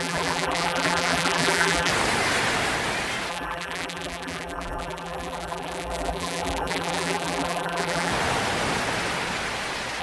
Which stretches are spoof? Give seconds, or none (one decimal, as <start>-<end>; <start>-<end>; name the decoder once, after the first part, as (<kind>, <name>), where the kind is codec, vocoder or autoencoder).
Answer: 0.0-1.9 (vocoder, BigVGAN v2); 3.3-8.1